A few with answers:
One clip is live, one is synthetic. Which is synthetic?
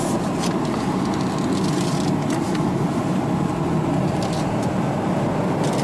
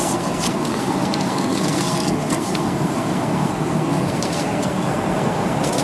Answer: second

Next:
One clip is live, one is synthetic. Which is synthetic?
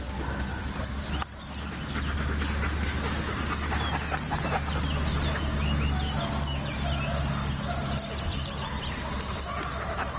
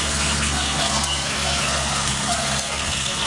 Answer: second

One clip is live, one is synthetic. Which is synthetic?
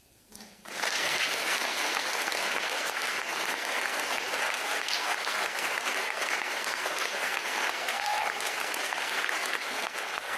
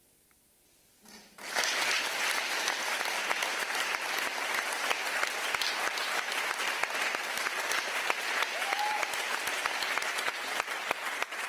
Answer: first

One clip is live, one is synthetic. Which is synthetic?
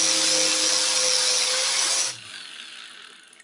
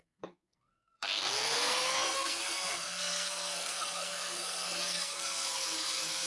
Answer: second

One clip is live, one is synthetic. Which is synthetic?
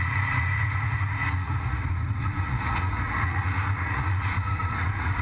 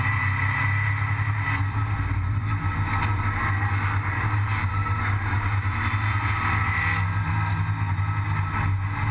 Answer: first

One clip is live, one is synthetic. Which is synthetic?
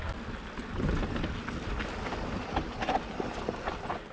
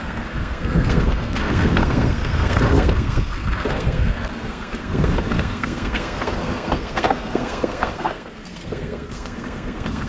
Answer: second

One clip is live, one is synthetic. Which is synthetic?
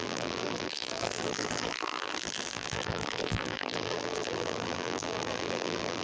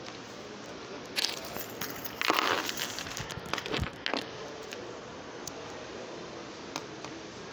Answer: first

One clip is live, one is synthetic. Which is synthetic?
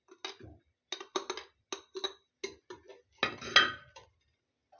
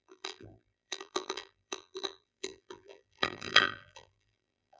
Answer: second